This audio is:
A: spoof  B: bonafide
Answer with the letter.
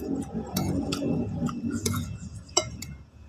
A